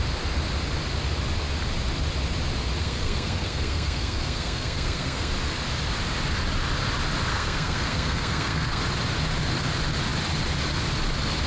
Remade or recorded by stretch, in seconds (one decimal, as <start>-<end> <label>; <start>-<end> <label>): 0.0-2.8 recorded; 2.8-5.3 remade; 5.3-7.3 recorded; 7.3-8.8 remade; 8.8-11.5 recorded